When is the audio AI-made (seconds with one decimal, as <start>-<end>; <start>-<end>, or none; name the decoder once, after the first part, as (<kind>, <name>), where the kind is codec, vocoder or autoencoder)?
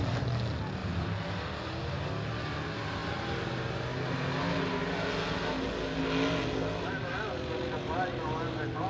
none